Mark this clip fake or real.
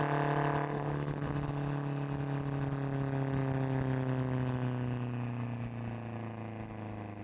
real